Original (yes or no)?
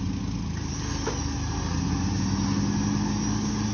yes